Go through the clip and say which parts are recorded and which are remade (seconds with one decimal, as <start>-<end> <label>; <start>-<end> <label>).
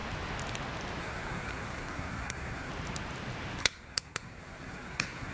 0.0-1.0 recorded; 1.0-2.7 remade; 2.7-3.6 recorded; 3.6-5.3 remade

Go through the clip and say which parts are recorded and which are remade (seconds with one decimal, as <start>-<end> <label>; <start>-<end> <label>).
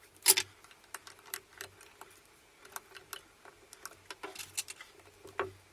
0.0-5.7 recorded